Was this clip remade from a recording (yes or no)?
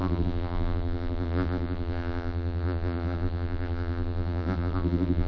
yes